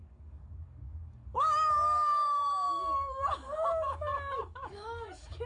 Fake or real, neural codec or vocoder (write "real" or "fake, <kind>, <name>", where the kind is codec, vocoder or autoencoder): fake, codec, DAC